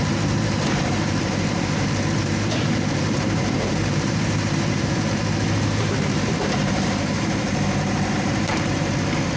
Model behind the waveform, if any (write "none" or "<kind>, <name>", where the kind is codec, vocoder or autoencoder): vocoder, BigVGAN v2